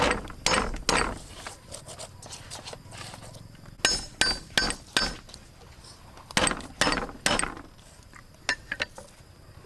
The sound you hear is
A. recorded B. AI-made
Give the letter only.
A